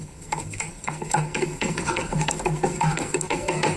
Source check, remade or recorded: remade